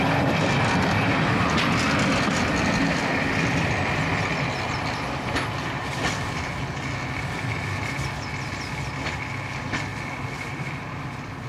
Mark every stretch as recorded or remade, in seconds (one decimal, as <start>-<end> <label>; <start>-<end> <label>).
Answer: 0.0-11.5 recorded